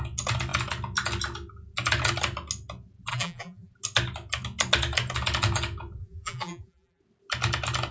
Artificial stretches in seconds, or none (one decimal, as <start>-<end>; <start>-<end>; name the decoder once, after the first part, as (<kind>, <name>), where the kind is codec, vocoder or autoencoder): 3.1-3.7 (vocoder, BigVGAN v2); 6.0-7.0